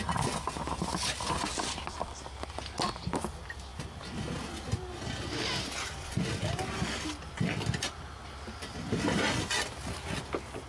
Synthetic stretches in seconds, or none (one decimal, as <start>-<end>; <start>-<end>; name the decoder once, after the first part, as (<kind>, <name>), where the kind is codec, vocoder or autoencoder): none